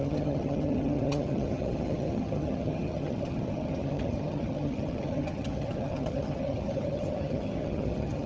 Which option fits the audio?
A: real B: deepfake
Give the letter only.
B